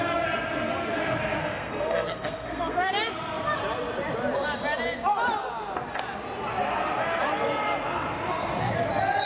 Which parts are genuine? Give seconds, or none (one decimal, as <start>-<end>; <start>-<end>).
0.0-1.4; 2.9-9.2